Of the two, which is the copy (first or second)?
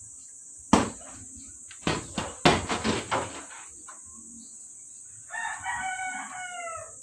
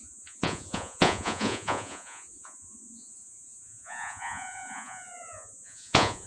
second